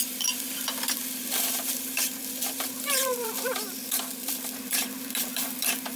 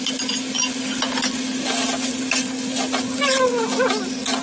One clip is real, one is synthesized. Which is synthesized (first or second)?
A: first